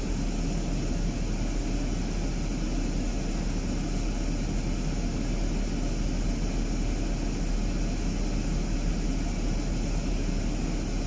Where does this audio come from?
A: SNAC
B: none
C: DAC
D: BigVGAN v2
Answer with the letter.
B